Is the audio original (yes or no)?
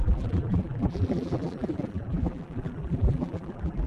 no